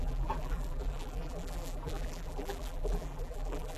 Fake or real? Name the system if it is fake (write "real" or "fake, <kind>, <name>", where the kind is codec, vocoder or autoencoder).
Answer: fake, vocoder, BigVGAN v2